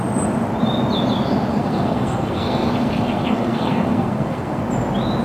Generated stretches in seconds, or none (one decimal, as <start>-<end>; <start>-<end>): 1.5-4.6